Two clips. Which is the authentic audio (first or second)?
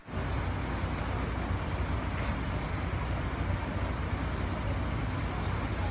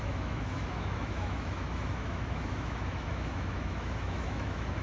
first